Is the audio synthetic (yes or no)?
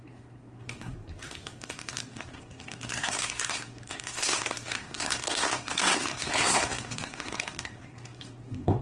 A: yes